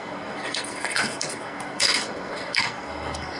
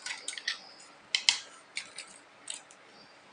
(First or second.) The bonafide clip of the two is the second